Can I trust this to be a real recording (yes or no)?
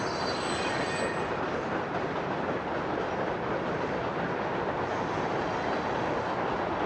yes